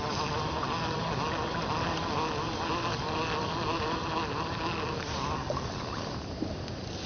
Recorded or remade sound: recorded